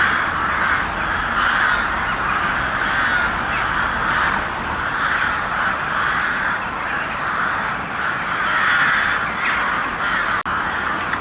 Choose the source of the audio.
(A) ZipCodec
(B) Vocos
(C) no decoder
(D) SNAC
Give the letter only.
C